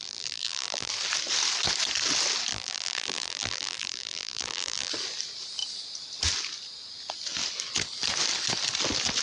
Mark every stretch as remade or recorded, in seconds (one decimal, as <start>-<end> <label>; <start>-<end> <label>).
0.0-0.9 remade; 0.9-2.5 recorded; 2.5-4.9 remade; 4.9-9.2 recorded